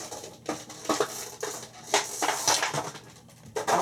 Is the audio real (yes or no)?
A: yes